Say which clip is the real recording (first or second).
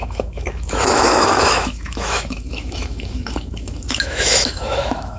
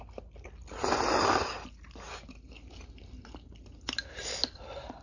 second